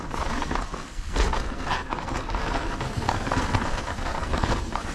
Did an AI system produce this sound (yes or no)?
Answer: yes